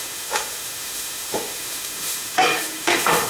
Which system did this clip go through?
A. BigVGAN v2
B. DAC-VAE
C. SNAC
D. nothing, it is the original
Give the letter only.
B